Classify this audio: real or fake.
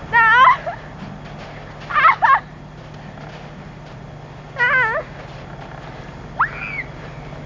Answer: real